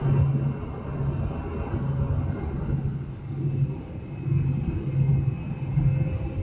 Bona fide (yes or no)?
yes